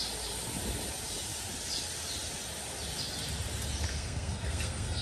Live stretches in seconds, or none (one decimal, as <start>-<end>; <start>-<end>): 0.0-3.9